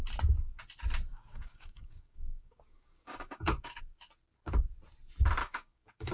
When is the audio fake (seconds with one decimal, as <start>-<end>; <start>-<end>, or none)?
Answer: 1.1-3.8; 5.4-6.1